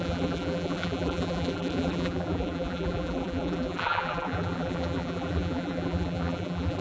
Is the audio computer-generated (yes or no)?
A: yes